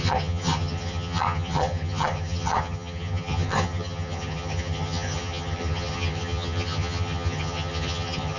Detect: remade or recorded remade